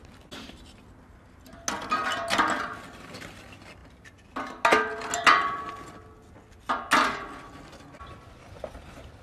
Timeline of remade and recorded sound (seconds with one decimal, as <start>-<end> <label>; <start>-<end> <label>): 0.0-9.2 recorded